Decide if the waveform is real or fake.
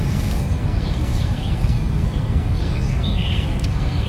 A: fake